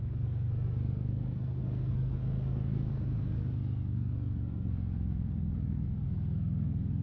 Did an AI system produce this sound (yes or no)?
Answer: yes